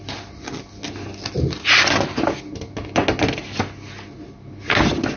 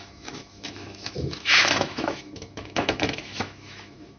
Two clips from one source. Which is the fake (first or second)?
second